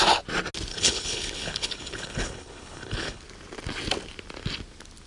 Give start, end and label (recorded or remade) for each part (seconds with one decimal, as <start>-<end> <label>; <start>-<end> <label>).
0.0-0.7 recorded; 0.7-3.2 remade; 3.2-5.1 recorded